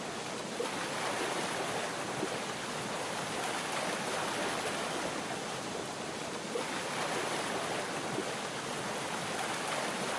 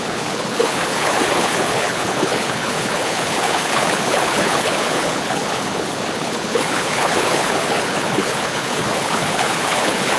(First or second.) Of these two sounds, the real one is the first